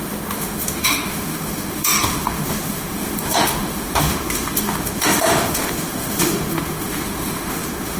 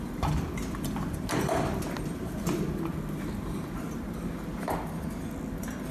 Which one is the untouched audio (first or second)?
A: second